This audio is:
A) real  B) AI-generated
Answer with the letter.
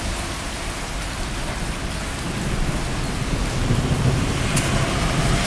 A